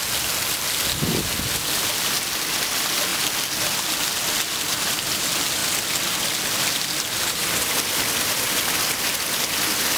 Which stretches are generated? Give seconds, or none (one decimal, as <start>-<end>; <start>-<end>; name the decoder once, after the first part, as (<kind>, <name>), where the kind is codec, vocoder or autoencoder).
none